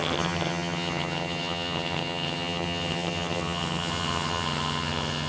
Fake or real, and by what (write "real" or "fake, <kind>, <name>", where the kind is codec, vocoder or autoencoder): fake, vocoder, HiFi-GAN